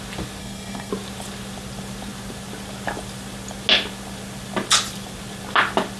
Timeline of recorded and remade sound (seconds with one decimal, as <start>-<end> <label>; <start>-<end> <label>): 0.0-0.4 recorded; 0.4-0.9 remade; 0.9-6.0 recorded